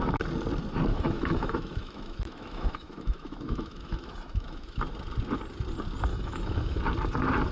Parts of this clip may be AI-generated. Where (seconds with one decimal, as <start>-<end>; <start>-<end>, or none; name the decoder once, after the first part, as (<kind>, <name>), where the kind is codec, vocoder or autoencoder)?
0.9-4.8 (autoencoder, DAC-VAE); 6.1-6.8